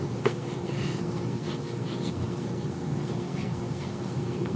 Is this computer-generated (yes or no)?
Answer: yes